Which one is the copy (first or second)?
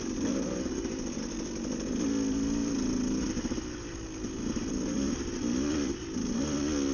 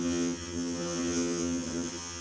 second